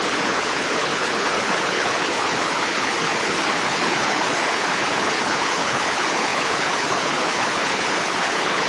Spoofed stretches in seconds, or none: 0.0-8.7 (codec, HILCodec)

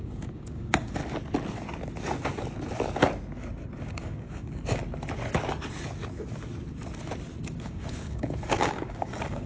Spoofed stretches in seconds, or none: 0.0-1.0 (codec, DAC); 3.8-4.8; 7.4-9.5

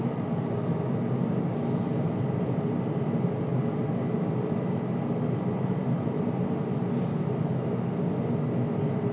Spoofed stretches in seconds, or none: none

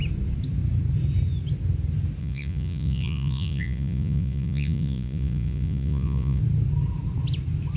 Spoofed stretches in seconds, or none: 2.2-6.4 (vocoder, Vocos)

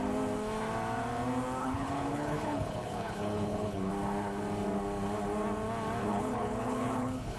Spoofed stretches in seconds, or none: 1.6-3.9 (codec, HILCodec); 6.0-7.4

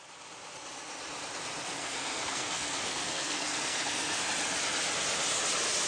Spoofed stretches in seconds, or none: 1.8-4.2 (codec, SNAC)

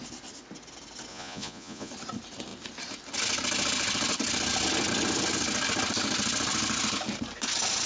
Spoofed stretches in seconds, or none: 1.1-1.9 (vocoder, Vocos)

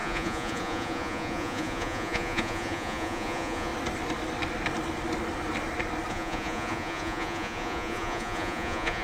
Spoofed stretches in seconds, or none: 0.0-3.7 (vocoder, Vocos); 6.1-9.0